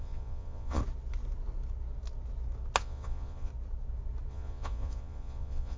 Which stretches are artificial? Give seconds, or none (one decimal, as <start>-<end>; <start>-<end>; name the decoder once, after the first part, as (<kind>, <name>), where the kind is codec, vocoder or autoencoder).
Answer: 0.0-0.8 (vocoder, Vocos); 2.8-3.5; 4.3-5.8